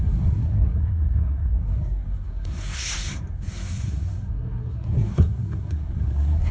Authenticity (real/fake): fake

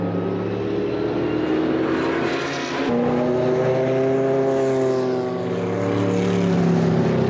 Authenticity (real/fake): real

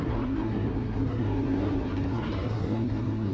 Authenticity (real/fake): fake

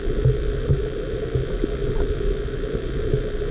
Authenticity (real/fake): real